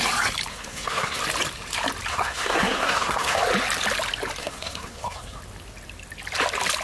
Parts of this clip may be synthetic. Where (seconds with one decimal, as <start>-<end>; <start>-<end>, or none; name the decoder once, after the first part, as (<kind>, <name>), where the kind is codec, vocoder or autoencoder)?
0.5-1.2 (codec, SNAC); 2.1-3.4; 4.4-5.4